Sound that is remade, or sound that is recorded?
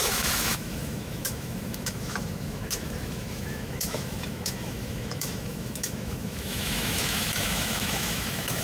remade